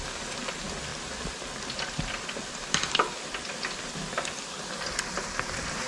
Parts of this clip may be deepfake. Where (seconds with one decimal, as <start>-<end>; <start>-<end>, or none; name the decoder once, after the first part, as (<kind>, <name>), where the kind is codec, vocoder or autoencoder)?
none